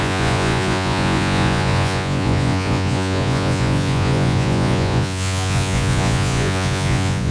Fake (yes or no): yes